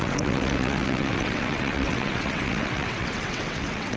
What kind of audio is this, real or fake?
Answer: fake